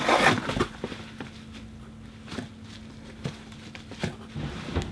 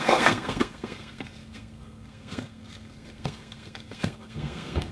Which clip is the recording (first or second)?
first